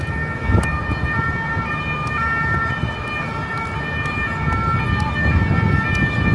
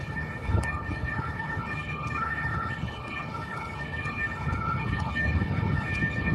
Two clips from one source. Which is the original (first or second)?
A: first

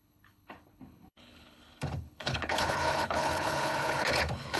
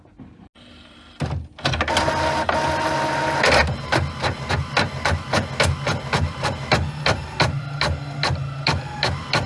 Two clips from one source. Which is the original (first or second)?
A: second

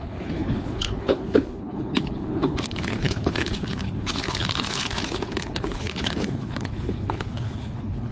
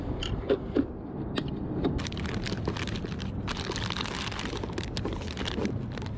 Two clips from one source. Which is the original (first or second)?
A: second